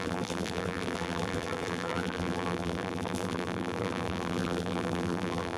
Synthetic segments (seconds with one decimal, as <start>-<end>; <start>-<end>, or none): 0.0-5.6